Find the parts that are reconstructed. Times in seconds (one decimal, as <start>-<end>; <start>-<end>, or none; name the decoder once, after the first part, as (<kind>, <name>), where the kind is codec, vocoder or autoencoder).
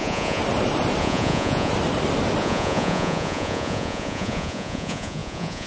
0.0-0.4 (vocoder, Vocos); 1.0-1.7; 2.4-5.7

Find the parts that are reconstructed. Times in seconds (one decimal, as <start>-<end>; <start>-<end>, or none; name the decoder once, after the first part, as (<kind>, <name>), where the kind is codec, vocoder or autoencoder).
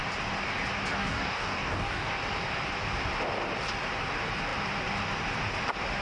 1.0-2.1 (codec, DAC)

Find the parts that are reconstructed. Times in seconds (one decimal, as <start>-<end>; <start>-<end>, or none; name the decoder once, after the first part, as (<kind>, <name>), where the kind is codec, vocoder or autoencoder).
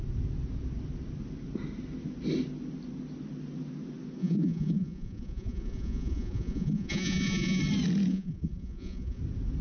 4.2-7.6 (vocoder, Vocos); 8.1-9.2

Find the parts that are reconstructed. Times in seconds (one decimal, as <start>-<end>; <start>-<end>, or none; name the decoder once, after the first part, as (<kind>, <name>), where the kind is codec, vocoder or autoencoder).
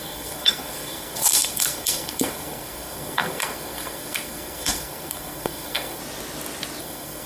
0.0-6.0 (codec, SNAC); 6.8-7.3